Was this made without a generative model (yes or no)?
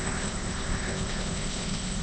no